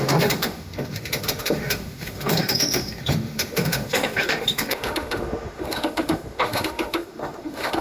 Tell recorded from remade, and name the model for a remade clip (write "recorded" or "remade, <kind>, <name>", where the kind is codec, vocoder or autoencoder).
remade, autoencoder, DAC-VAE